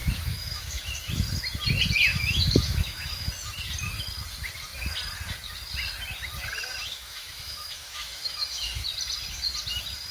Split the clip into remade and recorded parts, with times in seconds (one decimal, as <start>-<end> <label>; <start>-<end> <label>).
0.0-1.1 remade; 1.1-2.1 recorded; 2.1-3.3 remade; 3.3-6.8 recorded; 6.8-8.8 remade; 8.8-10.1 recorded